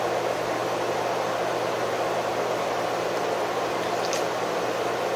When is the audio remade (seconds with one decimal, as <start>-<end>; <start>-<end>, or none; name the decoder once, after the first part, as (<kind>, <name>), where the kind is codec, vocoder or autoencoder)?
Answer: none